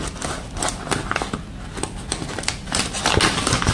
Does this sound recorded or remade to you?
recorded